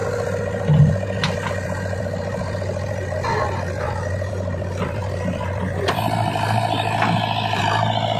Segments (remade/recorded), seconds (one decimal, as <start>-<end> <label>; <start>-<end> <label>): 0.0-8.2 recorded